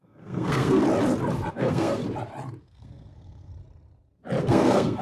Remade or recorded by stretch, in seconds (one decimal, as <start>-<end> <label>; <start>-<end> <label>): 0.0-0.8 remade; 0.8-1.5 recorded; 1.5-2.0 remade; 2.0-2.6 recorded; 2.6-3.5 remade; 3.5-4.4 recorded; 4.4-5.0 remade

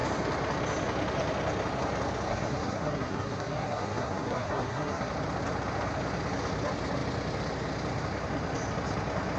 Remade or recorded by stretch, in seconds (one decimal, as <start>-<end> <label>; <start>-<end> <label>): 0.0-2.3 recorded; 2.3-5.1 remade; 5.1-9.4 recorded

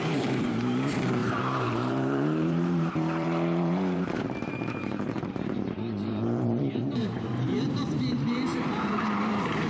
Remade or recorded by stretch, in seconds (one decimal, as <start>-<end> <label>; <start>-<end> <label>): 0.0-9.7 remade

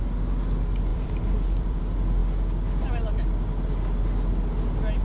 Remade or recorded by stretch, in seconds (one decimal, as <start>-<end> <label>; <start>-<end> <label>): 0.0-0.9 recorded; 0.9-1.8 remade; 1.8-5.0 recorded